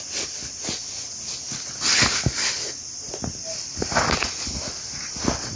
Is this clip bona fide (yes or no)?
yes